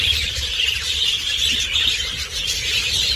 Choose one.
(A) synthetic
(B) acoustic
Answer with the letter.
A